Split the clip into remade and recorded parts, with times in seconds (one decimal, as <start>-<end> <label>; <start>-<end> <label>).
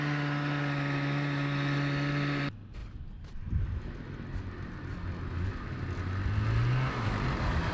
0.0-7.7 recorded